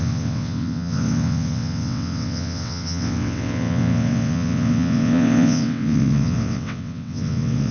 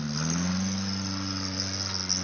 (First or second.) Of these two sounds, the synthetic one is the first